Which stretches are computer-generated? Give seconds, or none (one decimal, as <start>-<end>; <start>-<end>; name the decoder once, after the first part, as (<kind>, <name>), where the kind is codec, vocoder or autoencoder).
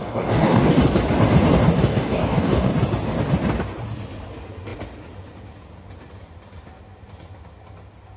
0.0-0.8 (codec, DAC); 1.9-2.7